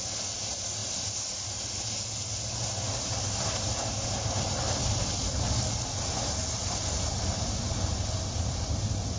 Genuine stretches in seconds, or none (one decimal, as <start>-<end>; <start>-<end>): 0.0-9.2